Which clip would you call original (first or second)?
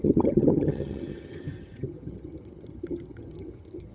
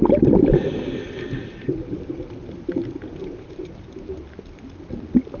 second